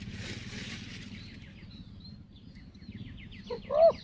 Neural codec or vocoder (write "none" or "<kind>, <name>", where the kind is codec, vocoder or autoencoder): none